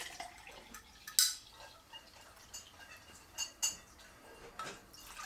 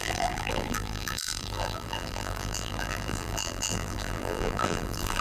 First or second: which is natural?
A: first